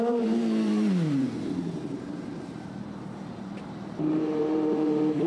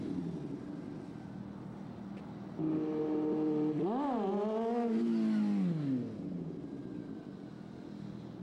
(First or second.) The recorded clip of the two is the second